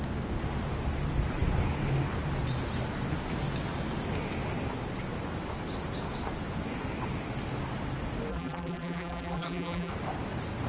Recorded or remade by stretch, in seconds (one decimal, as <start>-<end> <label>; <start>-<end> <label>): 0.0-8.3 recorded; 8.3-9.9 remade; 9.9-10.7 recorded